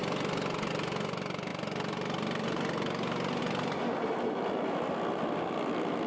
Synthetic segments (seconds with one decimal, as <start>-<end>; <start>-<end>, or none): none